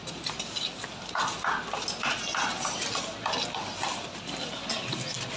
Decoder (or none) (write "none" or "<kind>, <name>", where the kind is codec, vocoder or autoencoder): none